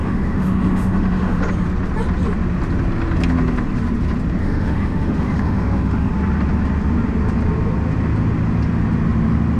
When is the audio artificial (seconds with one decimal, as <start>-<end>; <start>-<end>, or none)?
0.0-1.4; 4.4-6.1